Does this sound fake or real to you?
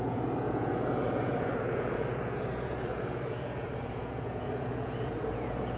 fake